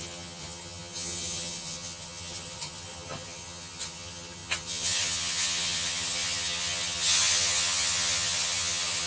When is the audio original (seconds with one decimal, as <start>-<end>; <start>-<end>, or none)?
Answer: none